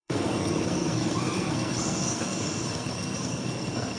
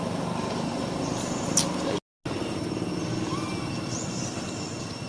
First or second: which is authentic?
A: second